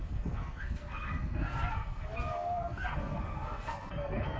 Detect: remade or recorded remade